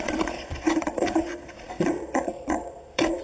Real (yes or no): no